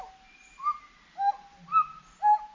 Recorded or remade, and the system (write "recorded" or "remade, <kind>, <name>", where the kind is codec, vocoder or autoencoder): recorded